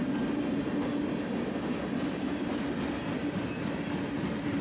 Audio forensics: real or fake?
real